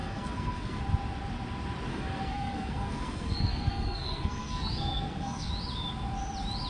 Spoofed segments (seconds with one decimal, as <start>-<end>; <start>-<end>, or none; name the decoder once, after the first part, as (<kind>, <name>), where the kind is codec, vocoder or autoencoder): 0.0-0.8 (codec, SNAC); 1.9-5.5